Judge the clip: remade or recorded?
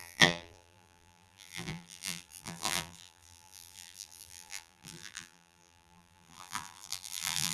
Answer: remade